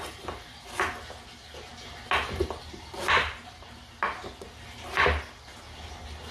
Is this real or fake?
real